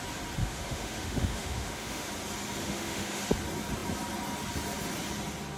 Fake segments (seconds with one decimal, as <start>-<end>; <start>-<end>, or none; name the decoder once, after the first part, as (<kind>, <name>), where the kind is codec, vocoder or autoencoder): 0.4-2.1 (autoencoder, DAC-VAE); 2.6-3.2